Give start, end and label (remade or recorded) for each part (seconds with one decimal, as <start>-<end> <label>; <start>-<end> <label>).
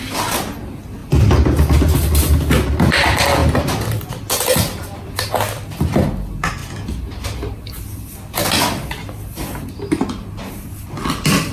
0.0-11.5 recorded